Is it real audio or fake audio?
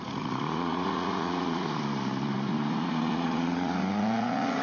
fake